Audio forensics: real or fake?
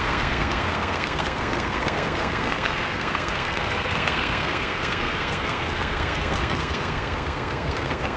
fake